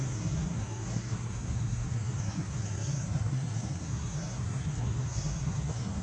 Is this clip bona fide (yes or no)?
no